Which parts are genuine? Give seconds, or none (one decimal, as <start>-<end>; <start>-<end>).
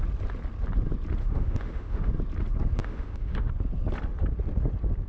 0.0-1.2; 2.1-2.8; 3.5-5.1